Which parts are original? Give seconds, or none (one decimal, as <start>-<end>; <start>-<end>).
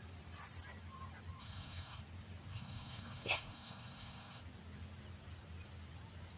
0.0-1.4; 2.0-2.5; 4.4-6.4